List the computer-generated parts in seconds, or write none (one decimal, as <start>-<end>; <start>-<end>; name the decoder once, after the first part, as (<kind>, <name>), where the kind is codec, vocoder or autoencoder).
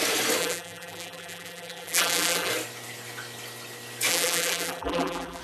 0.4-2.5 (vocoder, BigVGAN v2); 4.1-5.4